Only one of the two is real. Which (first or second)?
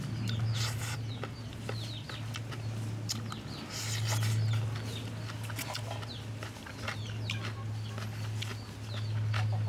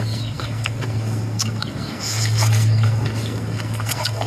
first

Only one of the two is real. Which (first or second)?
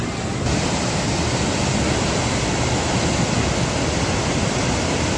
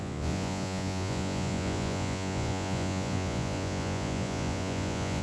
first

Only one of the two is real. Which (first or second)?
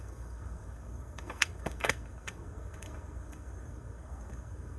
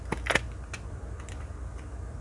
second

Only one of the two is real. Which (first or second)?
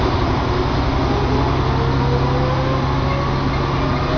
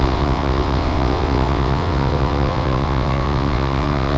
first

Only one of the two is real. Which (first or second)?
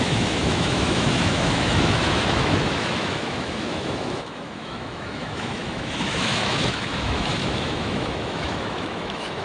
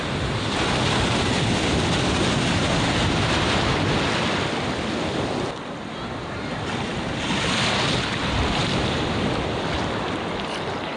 second